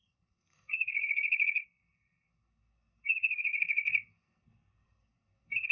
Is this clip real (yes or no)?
no